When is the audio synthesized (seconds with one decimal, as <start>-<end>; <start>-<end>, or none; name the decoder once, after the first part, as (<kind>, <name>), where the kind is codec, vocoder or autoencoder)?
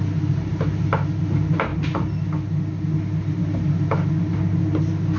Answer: none